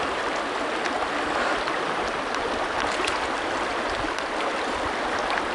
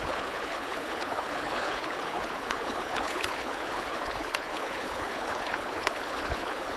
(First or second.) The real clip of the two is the first